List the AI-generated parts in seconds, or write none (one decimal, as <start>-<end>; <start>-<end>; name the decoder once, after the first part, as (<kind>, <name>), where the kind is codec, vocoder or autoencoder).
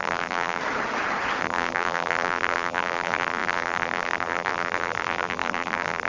0.0-0.6 (vocoder, BigVGAN v2); 1.4-6.1